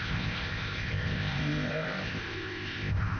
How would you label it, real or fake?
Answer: fake